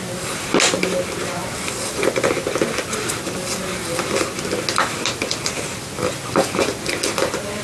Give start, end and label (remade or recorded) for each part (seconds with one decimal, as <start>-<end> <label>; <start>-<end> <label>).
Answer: 0.0-7.6 recorded